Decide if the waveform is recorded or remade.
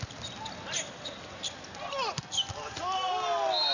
recorded